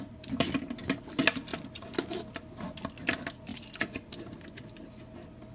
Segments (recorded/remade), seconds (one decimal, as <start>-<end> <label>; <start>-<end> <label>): 0.0-3.5 recorded; 3.5-4.8 remade; 4.8-5.5 recorded